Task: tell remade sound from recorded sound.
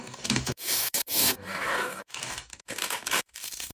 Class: remade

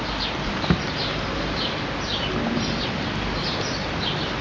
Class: recorded